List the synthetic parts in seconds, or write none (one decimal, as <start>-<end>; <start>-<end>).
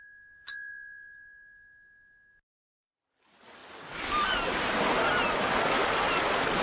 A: none